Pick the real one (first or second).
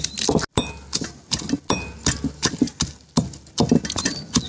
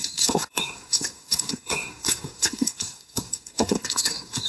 first